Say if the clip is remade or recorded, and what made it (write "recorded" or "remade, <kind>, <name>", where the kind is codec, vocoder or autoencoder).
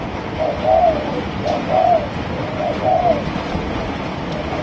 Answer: recorded